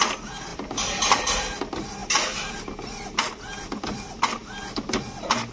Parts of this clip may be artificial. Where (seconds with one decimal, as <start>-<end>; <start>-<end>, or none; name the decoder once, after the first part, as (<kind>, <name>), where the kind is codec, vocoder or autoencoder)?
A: none